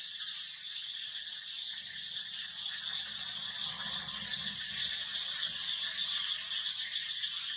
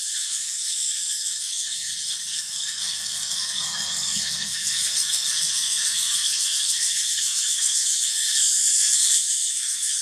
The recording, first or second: first